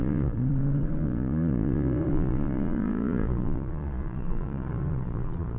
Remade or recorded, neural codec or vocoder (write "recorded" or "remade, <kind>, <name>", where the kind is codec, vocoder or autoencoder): remade, vocoder, Vocos